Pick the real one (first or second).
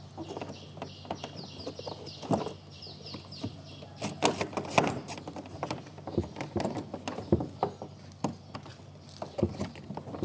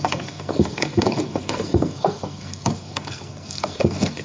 first